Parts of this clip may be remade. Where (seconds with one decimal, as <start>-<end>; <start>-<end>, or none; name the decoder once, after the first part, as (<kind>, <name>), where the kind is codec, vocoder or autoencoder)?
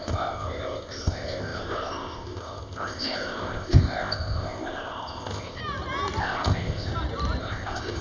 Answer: 0.0-5.6 (codec, ZipCodec); 6.2-6.9; 7.4-8.0